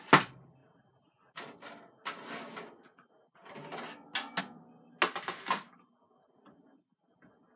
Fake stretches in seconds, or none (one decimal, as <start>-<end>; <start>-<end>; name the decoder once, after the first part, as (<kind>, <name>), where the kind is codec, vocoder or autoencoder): none